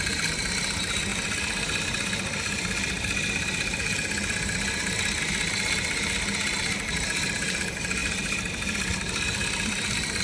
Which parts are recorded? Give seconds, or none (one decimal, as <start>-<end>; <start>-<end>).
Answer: 0.0-8.0